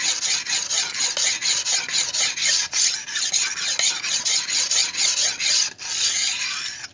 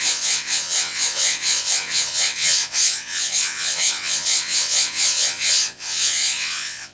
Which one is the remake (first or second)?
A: second